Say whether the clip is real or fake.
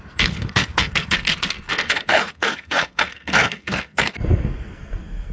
fake